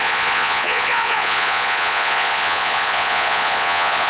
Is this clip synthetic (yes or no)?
yes